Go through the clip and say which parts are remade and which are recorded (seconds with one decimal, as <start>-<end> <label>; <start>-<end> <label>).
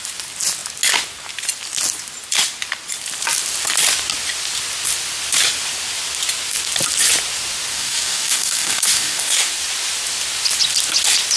0.0-7.7 recorded; 7.7-9.5 remade; 9.5-11.4 recorded